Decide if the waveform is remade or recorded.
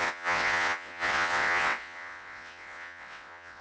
remade